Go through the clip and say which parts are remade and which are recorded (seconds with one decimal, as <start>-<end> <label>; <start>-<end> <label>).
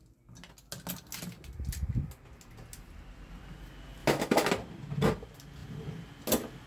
0.0-4.0 recorded; 4.0-4.5 remade; 4.5-6.7 recorded